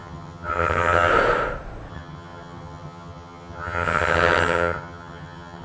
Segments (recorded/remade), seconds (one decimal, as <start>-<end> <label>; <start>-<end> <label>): 0.0-1.1 remade; 1.1-1.9 recorded; 1.9-5.6 remade